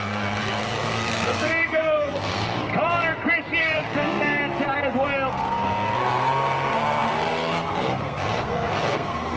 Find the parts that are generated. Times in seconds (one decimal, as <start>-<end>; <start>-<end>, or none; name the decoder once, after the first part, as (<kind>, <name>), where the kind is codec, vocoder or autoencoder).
0.0-2.7 (codec, SNAC); 3.6-4.4; 5.3-9.4